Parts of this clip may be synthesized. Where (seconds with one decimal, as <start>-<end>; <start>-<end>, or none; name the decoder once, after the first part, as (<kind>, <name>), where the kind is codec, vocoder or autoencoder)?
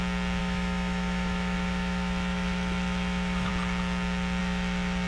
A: 0.4-3.5 (autoencoder, DAC-VAE); 4.4-5.1